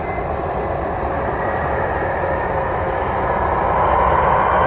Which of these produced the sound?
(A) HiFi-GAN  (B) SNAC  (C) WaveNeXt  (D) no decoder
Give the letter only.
D